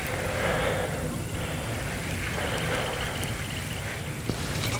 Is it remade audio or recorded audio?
recorded